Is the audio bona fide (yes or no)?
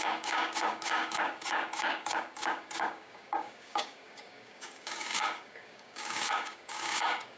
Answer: no